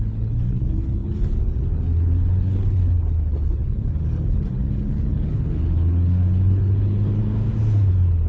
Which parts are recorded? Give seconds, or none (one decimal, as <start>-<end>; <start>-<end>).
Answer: 7.2-7.9